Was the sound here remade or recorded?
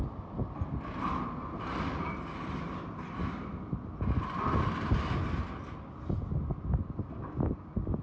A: recorded